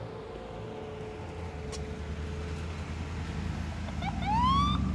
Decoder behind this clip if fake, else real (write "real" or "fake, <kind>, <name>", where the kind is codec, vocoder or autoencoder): real